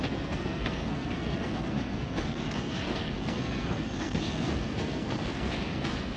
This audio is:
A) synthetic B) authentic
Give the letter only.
A